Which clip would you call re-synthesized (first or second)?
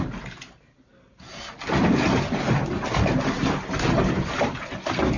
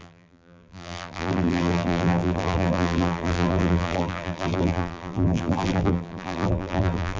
second